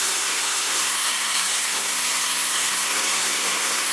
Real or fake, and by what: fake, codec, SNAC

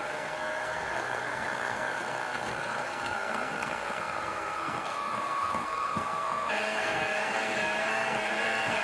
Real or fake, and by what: fake, codec, SNAC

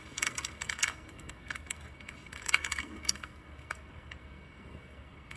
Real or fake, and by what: fake, codec, SNAC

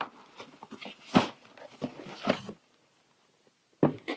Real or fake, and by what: real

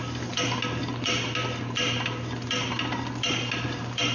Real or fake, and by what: real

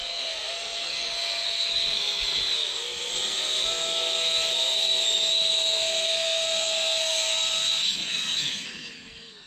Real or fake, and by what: fake, codec, SNAC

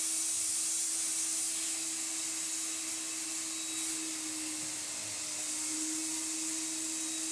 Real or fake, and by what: real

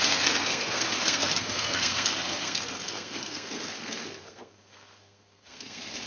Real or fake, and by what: fake, codec, SNAC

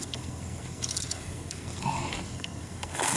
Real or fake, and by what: fake, codec, SNAC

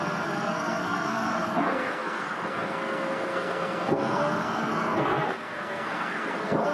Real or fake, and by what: fake, codec, SNAC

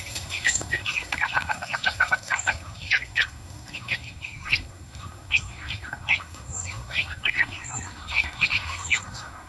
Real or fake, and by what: fake, codec, SNAC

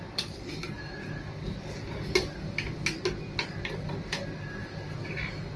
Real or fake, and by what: real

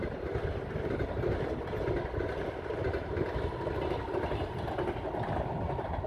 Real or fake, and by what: real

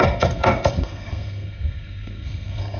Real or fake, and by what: fake, codec, SNAC